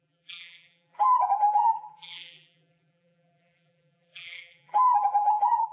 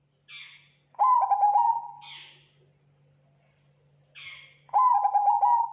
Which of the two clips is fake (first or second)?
first